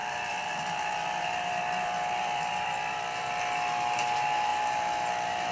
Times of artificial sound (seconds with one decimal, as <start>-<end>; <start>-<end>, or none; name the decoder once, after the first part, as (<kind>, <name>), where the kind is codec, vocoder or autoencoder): 0.0-3.3 (vocoder, BigVGAN v2)